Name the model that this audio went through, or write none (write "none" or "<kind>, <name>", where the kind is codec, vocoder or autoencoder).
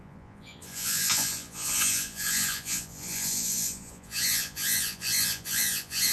vocoder, Vocos